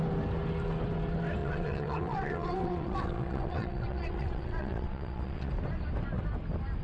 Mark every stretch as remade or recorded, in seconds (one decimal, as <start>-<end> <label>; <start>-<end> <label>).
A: 0.0-1.4 recorded; 1.4-5.5 remade; 5.5-6.8 recorded